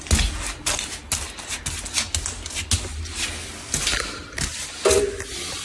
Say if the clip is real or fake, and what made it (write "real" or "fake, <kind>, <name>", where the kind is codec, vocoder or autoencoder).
real